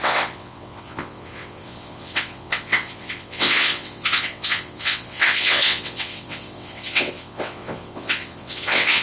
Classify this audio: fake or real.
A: fake